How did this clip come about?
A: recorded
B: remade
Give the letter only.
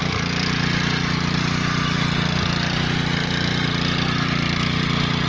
A